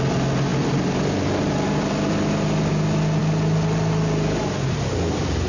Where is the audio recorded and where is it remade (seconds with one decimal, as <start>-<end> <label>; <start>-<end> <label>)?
0.0-0.5 recorded; 0.5-2.7 remade; 2.7-5.5 recorded